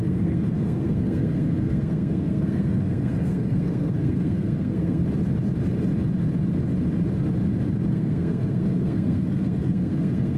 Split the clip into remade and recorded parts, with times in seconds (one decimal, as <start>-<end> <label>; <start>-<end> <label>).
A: 0.0-5.0 remade; 5.0-7.9 recorded; 7.9-10.4 remade